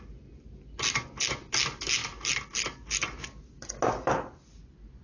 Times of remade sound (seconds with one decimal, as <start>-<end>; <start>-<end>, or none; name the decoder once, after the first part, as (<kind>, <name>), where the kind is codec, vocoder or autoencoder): none